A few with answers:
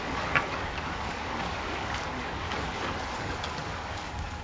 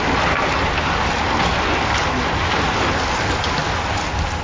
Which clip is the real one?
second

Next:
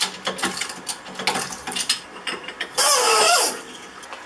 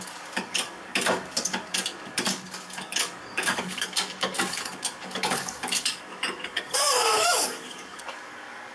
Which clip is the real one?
first